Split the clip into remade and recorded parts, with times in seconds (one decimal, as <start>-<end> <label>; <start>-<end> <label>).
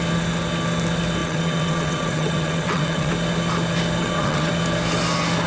0.0-1.2 recorded; 1.2-3.1 remade; 3.1-4.0 recorded; 4.0-4.5 remade; 4.5-5.5 recorded